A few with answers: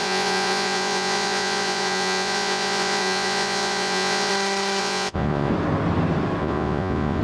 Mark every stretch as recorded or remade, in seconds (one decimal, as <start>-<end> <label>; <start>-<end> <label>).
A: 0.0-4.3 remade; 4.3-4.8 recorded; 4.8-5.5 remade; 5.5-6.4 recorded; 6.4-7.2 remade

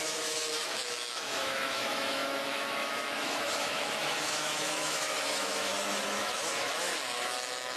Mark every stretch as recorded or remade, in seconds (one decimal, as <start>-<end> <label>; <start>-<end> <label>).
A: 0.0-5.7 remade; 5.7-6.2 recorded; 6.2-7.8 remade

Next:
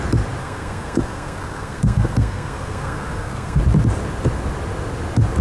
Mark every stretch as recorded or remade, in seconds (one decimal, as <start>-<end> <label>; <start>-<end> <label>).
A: 0.0-0.4 recorded; 0.4-3.6 remade; 3.6-5.4 recorded

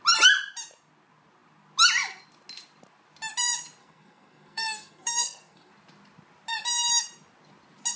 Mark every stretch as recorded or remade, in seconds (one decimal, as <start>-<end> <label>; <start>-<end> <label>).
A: 0.0-3.8 recorded; 3.8-5.7 remade; 5.7-8.0 recorded

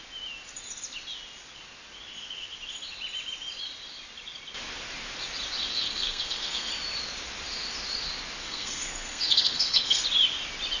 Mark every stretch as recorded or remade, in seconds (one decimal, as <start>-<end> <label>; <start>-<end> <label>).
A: 0.0-5.7 recorded; 5.7-6.7 remade; 6.7-8.4 recorded; 8.4-10.0 remade; 10.0-10.8 recorded